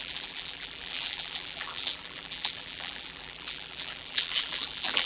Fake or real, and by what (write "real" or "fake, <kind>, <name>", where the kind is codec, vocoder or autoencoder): fake, vocoder, BigVGAN v2